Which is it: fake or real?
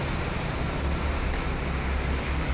real